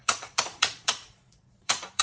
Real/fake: fake